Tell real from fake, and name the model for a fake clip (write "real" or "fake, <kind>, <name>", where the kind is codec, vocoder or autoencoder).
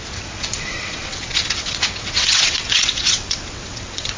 fake, vocoder, WaveNeXt